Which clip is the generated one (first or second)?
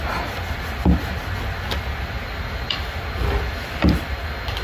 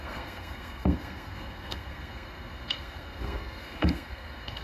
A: second